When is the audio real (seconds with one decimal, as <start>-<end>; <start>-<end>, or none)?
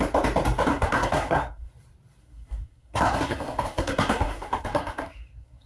0.0-0.7; 1.7-2.2